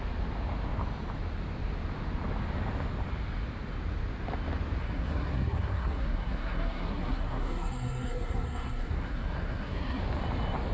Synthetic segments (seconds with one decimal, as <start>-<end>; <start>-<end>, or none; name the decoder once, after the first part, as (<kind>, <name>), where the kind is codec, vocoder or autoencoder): 4.8-10.0 (codec, SNAC)